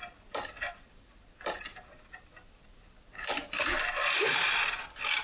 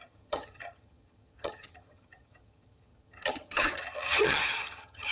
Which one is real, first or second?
first